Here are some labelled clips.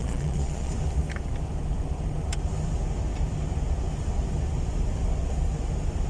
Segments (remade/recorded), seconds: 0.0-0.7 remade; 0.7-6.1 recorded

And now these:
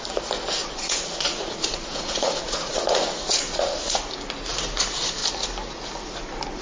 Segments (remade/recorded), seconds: 0.0-0.6 recorded; 0.6-4.0 remade; 4.0-6.6 recorded

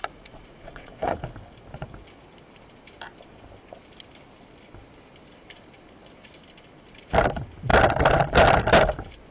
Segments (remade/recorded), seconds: 0.0-1.2 remade; 1.2-9.3 recorded

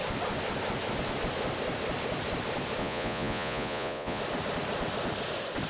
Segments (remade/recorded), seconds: 0.0-2.8 recorded; 2.8-4.2 remade; 4.2-5.7 recorded